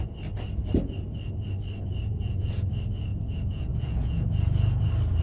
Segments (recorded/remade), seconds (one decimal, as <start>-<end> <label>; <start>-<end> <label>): 0.0-2.0 recorded; 2.0-2.7 remade; 2.7-3.1 recorded; 3.1-4.8 remade; 4.8-5.2 recorded